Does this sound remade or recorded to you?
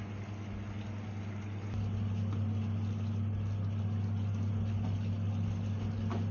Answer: recorded